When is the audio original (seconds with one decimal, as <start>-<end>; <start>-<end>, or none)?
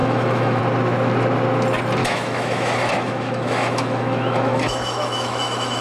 0.6-2.0